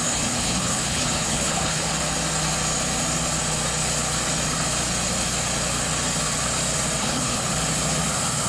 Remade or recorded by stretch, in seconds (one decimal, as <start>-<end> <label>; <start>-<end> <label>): 0.0-1.9 remade; 1.9-7.0 recorded; 7.0-7.5 remade; 7.5-8.5 recorded